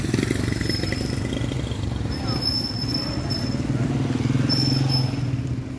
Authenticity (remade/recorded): recorded